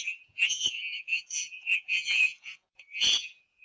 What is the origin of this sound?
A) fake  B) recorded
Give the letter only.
A